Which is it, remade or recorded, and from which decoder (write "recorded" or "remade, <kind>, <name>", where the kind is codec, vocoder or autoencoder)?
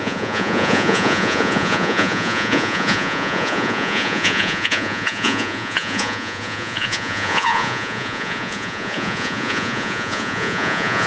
remade, vocoder, Vocos